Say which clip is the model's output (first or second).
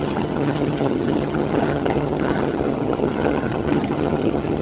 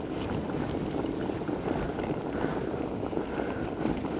first